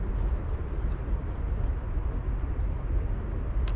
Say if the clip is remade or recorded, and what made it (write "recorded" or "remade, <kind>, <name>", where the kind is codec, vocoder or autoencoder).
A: recorded